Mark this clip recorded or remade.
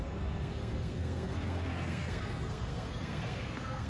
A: remade